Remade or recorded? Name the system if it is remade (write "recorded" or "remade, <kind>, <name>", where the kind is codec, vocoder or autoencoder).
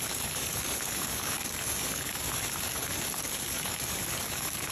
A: remade, codec, DAC